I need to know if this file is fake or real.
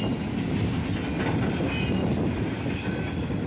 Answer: real